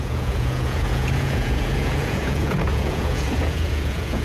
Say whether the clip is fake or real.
fake